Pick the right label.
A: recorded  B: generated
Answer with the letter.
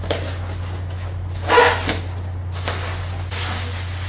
A